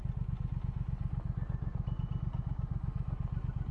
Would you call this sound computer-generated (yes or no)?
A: no